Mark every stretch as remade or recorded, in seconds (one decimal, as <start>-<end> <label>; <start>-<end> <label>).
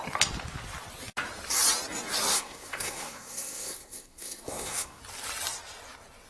0.0-2.3 recorded; 2.3-5.0 remade; 5.0-6.3 recorded